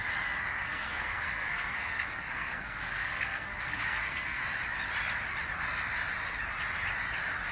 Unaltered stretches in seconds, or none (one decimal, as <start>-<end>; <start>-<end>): 0.0-0.5; 4.4-7.5